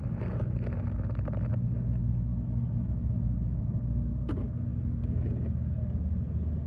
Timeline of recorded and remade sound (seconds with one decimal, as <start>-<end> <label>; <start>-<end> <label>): 0.0-1.5 recorded; 1.5-3.6 remade; 3.6-4.7 recorded; 4.7-5.3 remade; 5.3-6.7 recorded